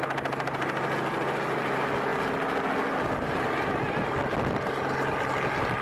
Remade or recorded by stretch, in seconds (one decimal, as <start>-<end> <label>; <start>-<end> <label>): 0.0-5.8 recorded